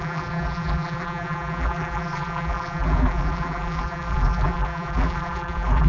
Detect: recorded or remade remade